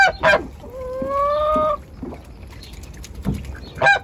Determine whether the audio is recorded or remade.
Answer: recorded